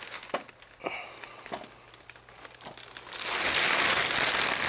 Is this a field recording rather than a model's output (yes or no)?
yes